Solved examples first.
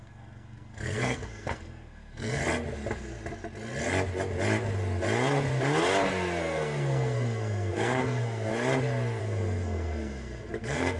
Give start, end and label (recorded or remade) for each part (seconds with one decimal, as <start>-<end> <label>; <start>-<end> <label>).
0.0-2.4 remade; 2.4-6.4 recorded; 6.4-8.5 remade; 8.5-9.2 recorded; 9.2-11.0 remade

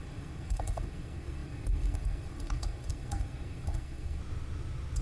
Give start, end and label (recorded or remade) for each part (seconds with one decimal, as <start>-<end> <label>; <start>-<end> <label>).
0.0-4.2 remade; 4.2-5.0 recorded

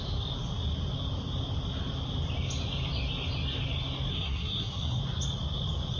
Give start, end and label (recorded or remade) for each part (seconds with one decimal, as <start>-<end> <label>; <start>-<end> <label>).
0.0-4.1 recorded; 4.1-5.0 remade; 5.0-6.0 recorded

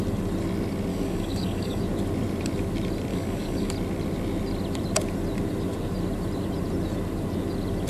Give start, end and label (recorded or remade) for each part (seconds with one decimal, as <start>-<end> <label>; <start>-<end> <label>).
0.0-0.9 recorded; 0.9-1.8 remade; 1.8-3.1 recorded; 3.1-3.7 remade; 3.7-7.9 recorded

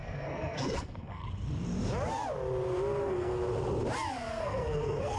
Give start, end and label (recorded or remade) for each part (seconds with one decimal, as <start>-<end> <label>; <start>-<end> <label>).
0.0-1.2 remade; 1.2-3.0 recorded; 3.0-3.4 remade; 3.4-4.3 recorded; 4.3-5.2 remade

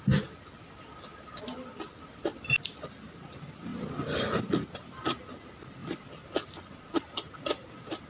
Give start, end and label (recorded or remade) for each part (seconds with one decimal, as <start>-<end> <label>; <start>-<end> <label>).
0.0-1.1 recorded; 1.1-1.8 remade; 1.8-5.8 recorded; 5.8-7.3 remade; 7.3-8.1 recorded